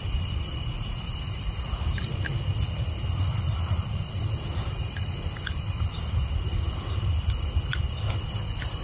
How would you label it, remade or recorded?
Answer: recorded